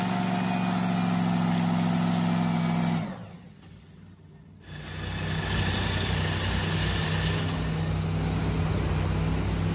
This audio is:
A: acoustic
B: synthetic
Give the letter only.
A